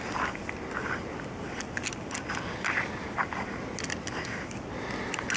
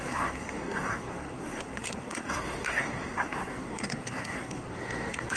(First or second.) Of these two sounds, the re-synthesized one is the second